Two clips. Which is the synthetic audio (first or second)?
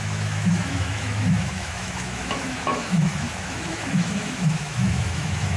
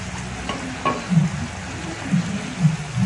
first